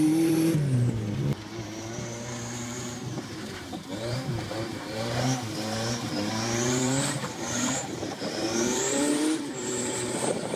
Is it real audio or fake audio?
fake